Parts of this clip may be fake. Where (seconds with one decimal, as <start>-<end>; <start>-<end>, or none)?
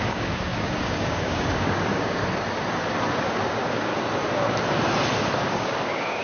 0.0-2.2; 3.1-3.9; 5.5-6.2